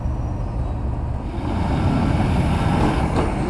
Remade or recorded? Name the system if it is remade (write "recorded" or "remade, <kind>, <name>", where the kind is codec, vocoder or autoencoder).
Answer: recorded